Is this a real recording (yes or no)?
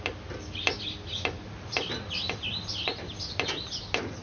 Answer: yes